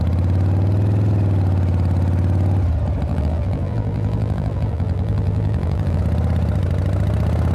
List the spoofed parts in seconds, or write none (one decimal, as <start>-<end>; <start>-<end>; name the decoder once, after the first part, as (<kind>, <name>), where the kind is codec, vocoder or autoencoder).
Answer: 3.1-6.0 (vocoder, BigVGAN v2)